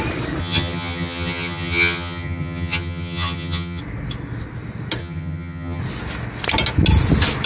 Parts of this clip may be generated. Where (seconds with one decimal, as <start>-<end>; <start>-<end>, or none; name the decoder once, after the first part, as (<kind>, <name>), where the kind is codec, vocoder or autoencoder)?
0.4-3.8 (vocoder, HiFi-GAN); 5.0-5.8